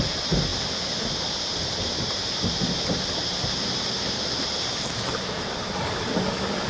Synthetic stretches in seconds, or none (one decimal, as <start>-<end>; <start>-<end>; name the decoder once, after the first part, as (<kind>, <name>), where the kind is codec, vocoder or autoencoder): none

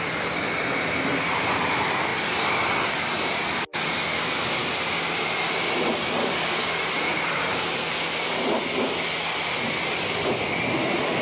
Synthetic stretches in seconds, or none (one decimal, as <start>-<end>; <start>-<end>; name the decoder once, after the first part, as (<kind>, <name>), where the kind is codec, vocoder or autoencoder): none

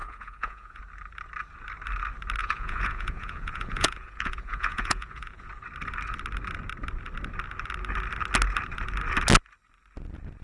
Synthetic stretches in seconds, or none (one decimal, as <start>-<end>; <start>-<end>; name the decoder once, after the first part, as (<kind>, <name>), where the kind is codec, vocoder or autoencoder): 0.0-0.8 (vocoder, Vocos); 2.4-5.5

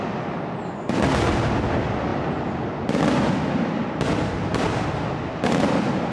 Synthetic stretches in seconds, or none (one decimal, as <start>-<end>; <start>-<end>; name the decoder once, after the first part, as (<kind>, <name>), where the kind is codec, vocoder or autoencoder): none

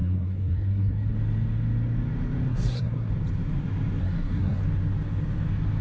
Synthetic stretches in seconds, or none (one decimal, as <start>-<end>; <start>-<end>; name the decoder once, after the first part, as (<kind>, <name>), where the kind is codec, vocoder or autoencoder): 0.0-1.1 (codec, SNAC); 2.5-3.1; 4.0-4.6

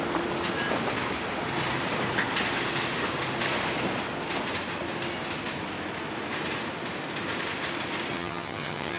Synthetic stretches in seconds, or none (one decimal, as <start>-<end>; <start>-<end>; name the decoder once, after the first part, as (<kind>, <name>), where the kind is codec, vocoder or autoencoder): 8.1-9.0 (vocoder, HiFi-GAN)

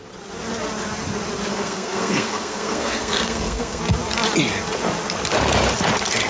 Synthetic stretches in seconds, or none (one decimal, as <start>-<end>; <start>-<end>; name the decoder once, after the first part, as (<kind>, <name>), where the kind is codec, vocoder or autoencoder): 1.5-3.8 (codec, SNAC)

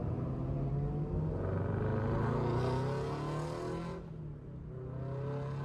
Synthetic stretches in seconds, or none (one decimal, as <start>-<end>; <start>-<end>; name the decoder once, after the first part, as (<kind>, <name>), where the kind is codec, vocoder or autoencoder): 0.0-0.7 (vocoder, BigVGAN v2)